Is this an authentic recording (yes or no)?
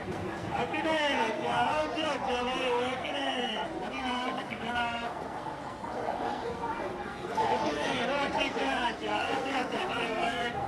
no